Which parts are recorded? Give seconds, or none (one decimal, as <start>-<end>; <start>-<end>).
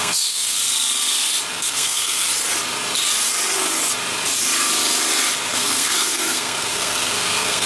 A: 0.6-1.5; 2.3-5.5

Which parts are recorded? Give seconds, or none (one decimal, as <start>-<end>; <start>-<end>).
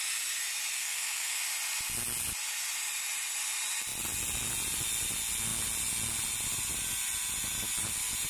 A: 0.0-0.7; 1.4-8.3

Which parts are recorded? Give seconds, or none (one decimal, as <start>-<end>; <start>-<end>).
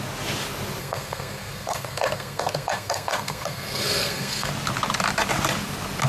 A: 0.0-0.8; 4.5-6.1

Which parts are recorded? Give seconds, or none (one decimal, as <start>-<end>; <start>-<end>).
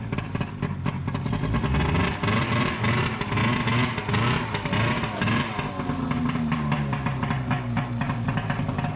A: 0.0-9.0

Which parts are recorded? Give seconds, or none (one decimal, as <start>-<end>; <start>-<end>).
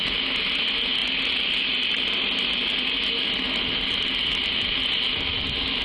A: 0.0-5.8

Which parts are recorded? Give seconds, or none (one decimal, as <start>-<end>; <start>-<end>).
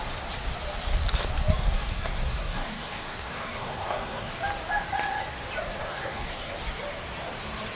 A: 0.0-1.6; 4.3-5.8; 6.5-7.8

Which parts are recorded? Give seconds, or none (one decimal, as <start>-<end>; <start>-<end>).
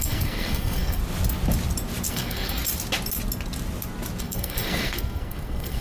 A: 1.0-2.1; 2.6-4.2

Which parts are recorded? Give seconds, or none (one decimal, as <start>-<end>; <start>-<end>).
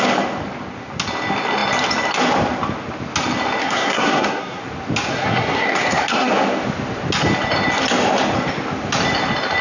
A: 0.0-3.6; 4.6-5.1; 6.3-9.6